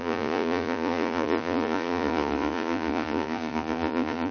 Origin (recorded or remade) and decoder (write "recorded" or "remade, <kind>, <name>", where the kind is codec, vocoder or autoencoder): remade, vocoder, Vocos